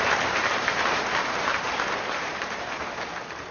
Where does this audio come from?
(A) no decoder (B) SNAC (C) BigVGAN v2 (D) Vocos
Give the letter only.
C